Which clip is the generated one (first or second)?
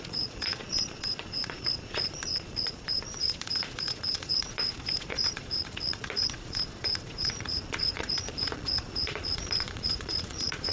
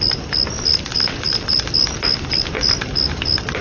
first